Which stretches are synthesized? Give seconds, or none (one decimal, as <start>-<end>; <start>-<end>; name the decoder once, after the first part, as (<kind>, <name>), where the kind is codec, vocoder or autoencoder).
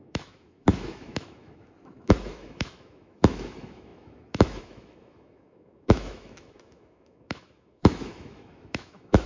0.0-9.3 (autoencoder, DAC-VAE)